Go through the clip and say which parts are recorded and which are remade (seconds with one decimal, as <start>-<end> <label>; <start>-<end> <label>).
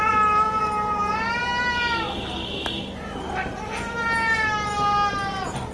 0.0-5.7 recorded